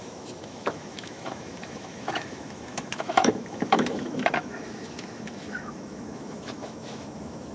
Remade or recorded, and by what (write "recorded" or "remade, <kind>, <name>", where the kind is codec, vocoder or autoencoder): remade, autoencoder, DAC-VAE